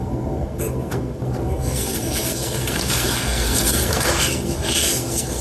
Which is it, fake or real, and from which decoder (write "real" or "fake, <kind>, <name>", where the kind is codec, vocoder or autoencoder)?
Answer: fake, codec, SNAC